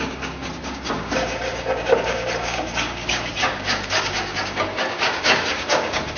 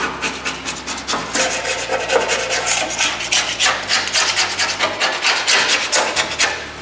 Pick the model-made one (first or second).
first